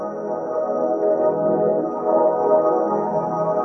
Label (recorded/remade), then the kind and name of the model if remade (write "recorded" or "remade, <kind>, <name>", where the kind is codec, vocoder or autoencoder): recorded